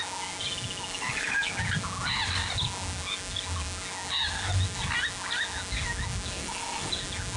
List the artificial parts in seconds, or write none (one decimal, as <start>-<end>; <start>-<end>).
0.9-1.5; 6.4-6.9